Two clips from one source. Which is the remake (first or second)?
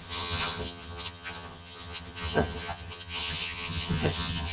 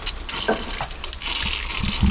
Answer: first